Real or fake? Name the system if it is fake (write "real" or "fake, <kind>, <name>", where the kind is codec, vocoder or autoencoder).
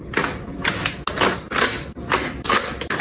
real